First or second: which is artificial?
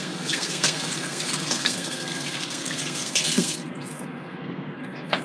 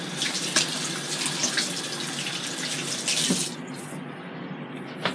first